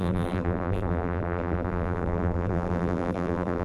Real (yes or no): no